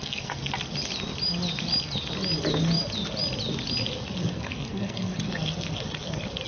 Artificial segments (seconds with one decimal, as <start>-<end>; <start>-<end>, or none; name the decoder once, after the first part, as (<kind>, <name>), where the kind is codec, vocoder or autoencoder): 0.0-0.4 (codec, SNAC); 4.3-5.1